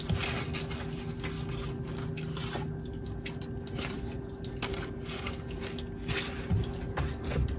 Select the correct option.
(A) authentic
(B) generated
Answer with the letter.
A